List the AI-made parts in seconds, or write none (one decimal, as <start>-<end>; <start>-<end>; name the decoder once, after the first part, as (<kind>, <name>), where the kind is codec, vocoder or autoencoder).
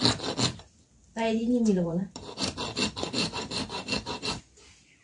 1.4-4.4 (vocoder, BigVGAN v2)